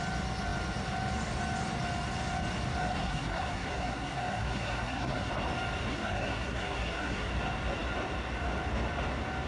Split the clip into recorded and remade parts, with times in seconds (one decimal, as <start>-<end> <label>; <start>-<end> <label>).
0.0-2.8 recorded; 2.8-5.3 remade; 5.3-5.9 recorded; 5.9-7.3 remade; 7.3-9.5 recorded

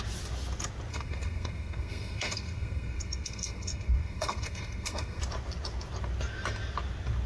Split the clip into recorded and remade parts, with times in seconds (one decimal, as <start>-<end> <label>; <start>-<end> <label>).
0.0-0.9 recorded; 0.9-5.2 remade; 5.2-7.3 recorded

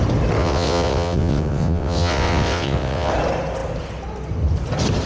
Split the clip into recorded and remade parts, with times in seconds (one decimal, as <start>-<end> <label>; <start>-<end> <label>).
0.0-0.4 recorded; 0.4-3.1 remade; 3.1-5.1 recorded

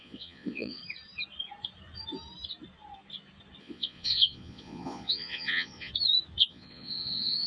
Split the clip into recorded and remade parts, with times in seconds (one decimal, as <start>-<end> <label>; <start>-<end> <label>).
0.0-0.8 remade; 0.8-3.6 recorded; 3.6-5.9 remade; 5.9-6.5 recorded; 6.5-7.5 remade

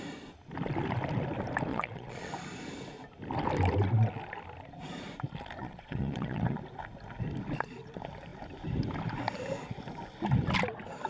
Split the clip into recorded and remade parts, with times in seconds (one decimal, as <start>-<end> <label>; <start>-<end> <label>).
0.0-1.7 recorded; 1.7-2.3 remade; 2.3-5.6 recorded; 5.6-6.6 remade; 6.6-11.1 recorded

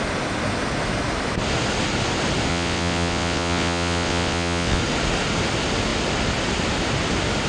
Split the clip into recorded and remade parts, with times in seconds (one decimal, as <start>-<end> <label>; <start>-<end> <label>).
0.0-2.5 recorded; 2.5-4.8 remade; 4.8-7.5 recorded